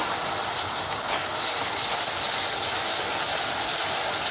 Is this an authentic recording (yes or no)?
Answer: yes